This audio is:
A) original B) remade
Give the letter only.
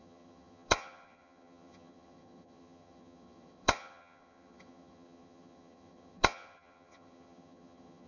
B